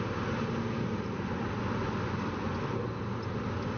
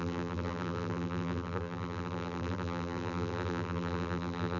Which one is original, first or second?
first